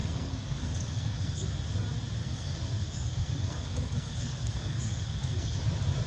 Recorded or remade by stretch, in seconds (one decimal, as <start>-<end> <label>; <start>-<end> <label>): 0.0-1.5 remade; 1.5-2.2 recorded; 2.2-5.6 remade; 5.6-6.1 recorded